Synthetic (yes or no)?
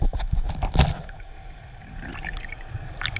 no